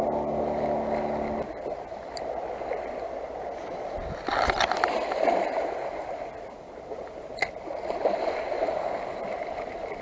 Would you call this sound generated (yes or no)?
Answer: no